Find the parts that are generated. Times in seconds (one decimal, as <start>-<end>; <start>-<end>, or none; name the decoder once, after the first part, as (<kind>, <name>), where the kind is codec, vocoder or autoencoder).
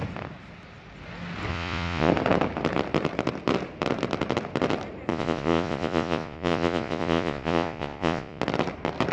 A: 1.5-2.1 (vocoder, Vocos); 5.1-8.4